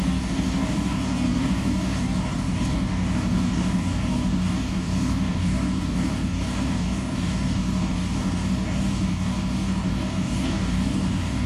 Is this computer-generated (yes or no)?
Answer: yes